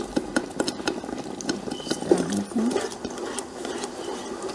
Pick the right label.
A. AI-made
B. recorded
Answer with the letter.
B